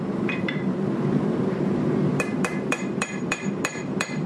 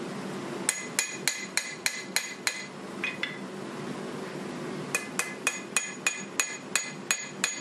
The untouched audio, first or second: second